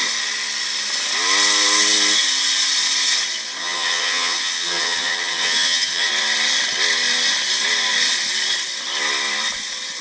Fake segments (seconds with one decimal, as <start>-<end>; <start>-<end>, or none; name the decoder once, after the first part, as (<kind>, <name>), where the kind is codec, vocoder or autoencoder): 3.6-6.1 (vocoder, HiFi-GAN)